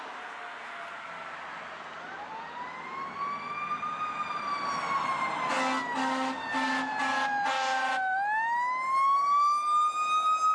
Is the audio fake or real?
real